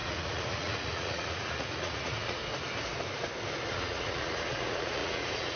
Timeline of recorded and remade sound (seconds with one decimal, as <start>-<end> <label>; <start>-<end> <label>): 0.0-2.4 remade; 2.4-3.7 recorded; 3.7-5.6 remade